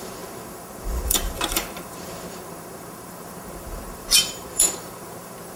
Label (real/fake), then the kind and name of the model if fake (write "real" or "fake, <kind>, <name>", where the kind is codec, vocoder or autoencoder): fake, vocoder, BigVGAN v2